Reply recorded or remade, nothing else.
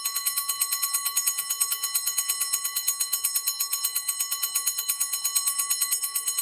remade